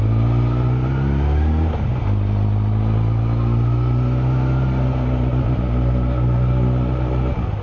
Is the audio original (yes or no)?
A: yes